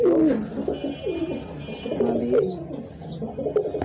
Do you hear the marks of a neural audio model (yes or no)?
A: no